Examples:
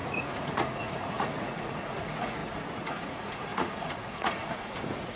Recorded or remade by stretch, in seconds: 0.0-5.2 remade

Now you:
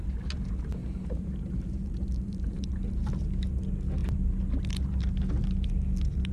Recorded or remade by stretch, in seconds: 0.0-0.8 recorded; 0.8-2.7 remade; 2.7-6.3 recorded

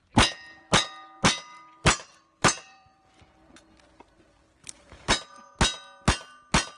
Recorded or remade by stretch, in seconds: 0.0-1.5 recorded; 1.5-3.3 remade; 3.3-4.6 recorded; 4.6-5.1 remade; 5.1-6.8 recorded

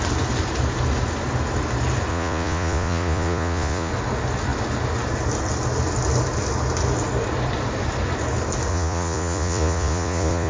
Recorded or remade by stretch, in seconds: 0.0-2.1 recorded; 2.1-3.9 remade; 3.9-8.7 recorded; 8.7-10.5 remade

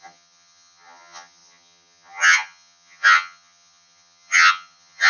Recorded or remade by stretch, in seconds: 0.0-5.1 remade